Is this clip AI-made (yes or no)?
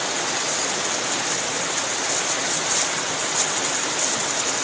no